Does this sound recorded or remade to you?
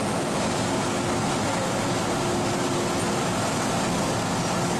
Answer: recorded